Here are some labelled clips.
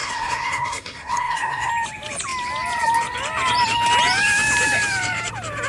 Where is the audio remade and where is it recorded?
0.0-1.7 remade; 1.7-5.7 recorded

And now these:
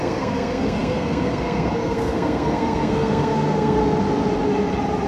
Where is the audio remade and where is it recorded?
0.0-3.8 remade; 3.8-5.1 recorded